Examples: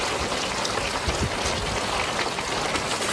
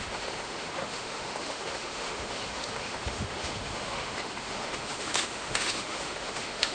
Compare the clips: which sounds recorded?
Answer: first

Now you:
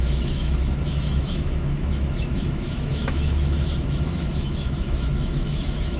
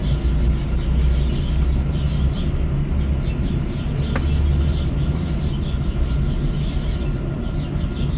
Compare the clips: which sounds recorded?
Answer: second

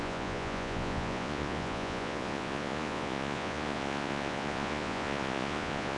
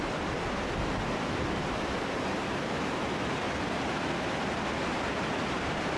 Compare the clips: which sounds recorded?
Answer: second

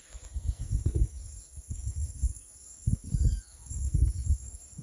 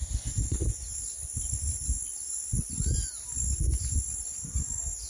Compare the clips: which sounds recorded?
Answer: second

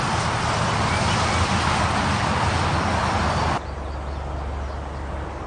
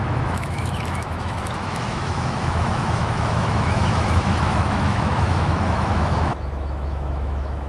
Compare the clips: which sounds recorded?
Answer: first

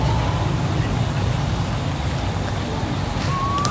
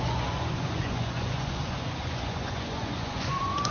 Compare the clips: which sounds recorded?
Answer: first